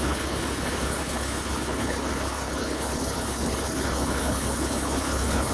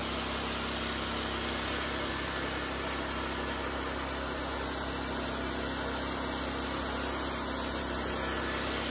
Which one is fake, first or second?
first